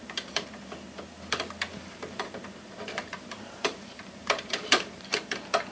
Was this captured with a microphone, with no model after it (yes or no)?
no